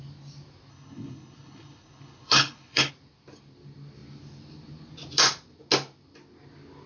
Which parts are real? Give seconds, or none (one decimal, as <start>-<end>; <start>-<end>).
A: 0.0-0.7; 2.9-6.9